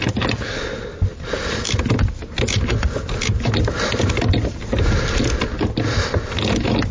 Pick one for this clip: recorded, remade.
recorded